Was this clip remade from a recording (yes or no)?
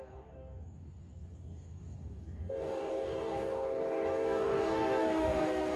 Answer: yes